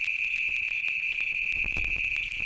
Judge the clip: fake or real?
fake